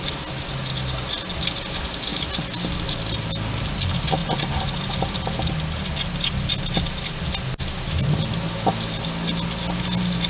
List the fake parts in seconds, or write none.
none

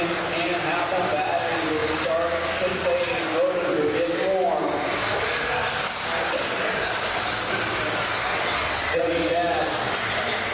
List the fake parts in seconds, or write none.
8.3-9.1 (vocoder, WaveNeXt)

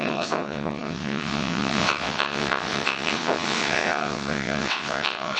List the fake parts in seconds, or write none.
0.0-5.4 (vocoder, WaveNeXt)

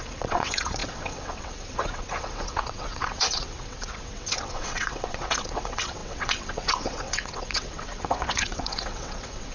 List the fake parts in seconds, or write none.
0.0-9.5 (vocoder, WaveNeXt)